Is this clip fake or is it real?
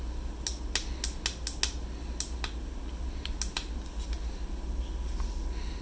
real